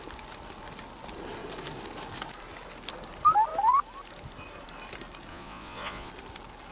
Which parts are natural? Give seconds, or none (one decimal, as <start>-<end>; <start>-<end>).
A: 0.0-5.3; 6.1-6.7